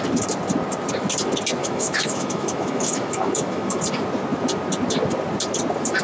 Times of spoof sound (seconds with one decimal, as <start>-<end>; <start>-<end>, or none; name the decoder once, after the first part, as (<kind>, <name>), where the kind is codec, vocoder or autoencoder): 1.6-3.8 (autoencoder, DAC-VAE)